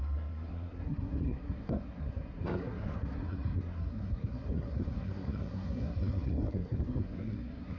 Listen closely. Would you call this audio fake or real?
fake